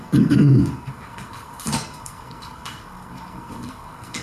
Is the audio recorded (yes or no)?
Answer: no